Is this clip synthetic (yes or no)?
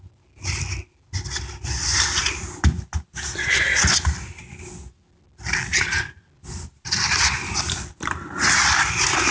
no